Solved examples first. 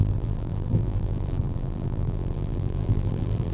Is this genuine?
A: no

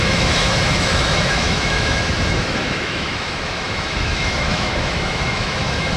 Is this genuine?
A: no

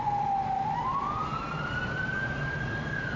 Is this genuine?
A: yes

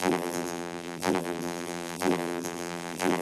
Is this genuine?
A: no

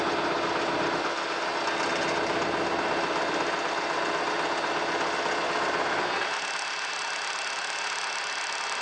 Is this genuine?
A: yes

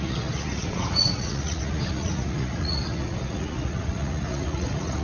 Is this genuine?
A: no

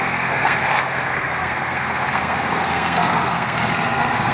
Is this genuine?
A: no